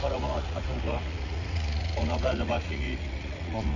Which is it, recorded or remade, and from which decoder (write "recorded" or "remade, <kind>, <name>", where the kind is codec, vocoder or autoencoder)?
remade, vocoder, Vocos